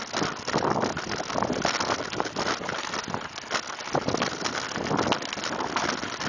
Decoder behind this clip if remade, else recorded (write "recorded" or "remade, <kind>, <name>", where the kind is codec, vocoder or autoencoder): recorded